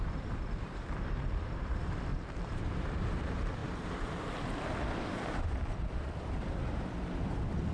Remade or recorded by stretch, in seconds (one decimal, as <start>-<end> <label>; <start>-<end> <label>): 0.0-7.7 remade